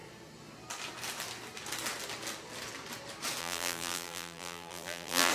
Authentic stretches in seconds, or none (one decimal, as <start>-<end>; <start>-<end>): 0.0-3.4

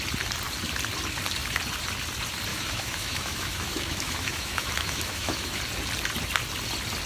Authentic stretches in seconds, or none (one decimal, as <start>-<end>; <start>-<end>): 0.0-2.5; 5.6-7.1

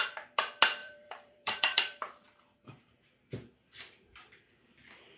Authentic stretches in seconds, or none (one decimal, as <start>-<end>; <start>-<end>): 0.0-0.8; 3.1-5.2

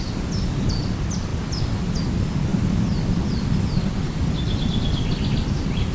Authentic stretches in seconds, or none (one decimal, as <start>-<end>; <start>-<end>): 0.0-5.9

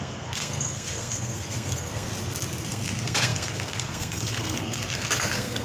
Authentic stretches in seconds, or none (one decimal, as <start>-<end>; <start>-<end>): 2.1-2.6

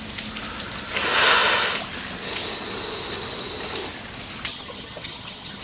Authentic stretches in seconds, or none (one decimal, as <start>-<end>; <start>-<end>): 0.0-4.5

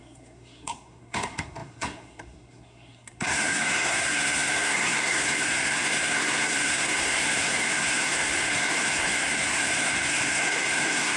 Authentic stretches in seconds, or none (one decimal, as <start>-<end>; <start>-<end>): none